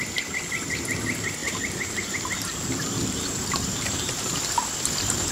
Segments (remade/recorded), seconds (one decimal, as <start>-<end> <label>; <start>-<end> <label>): 0.0-1.4 recorded; 1.4-4.5 remade; 4.5-5.3 recorded